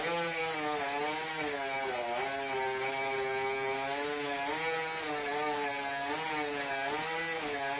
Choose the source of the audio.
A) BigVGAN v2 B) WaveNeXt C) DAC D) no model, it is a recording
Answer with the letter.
D